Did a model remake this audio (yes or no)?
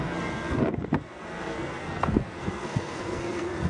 yes